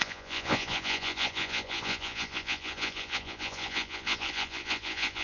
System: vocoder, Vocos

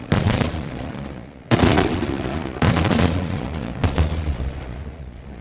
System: vocoder, Vocos